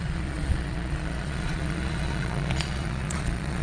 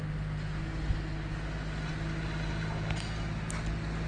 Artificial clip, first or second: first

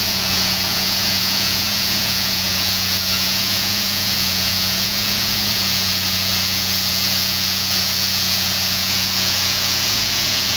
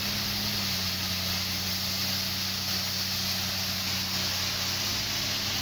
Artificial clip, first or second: first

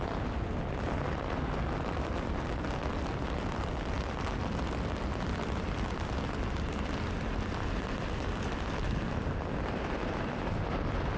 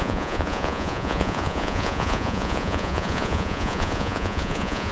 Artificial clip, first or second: second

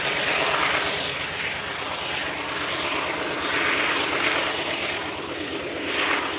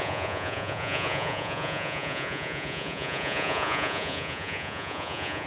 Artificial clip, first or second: second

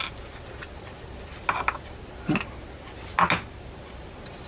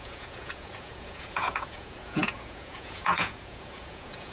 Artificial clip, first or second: second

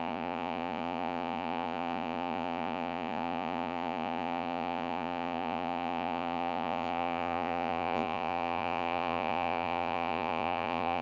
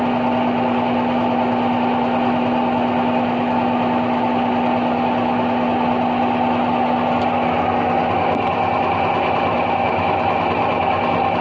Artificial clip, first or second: first